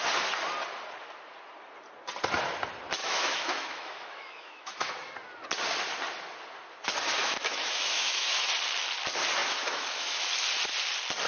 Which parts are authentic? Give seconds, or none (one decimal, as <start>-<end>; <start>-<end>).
0.0-3.0; 4.9-7.2; 8.5-9.4; 10.2-11.3